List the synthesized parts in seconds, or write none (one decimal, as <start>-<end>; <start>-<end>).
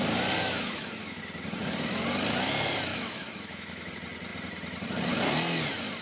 0.4-1.2; 2.9-3.9